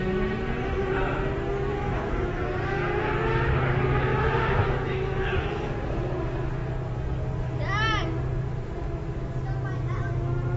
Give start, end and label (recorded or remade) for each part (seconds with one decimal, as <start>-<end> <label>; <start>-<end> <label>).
0.0-1.7 recorded; 1.7-2.3 remade; 2.3-4.1 recorded; 4.1-5.7 remade; 5.7-10.6 recorded